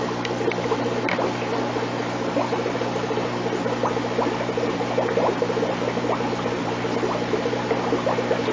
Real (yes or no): yes